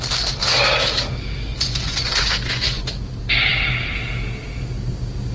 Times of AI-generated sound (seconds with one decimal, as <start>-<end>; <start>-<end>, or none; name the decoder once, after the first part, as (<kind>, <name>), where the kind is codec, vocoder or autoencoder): 1.5-2.9 (vocoder, Vocos)